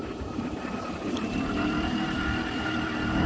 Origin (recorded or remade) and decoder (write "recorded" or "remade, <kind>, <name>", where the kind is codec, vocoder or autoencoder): remade, vocoder, BigVGAN v2